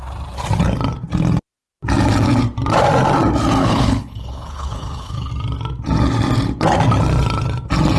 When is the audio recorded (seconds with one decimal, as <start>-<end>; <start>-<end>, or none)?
0.0-3.6; 5.3-8.0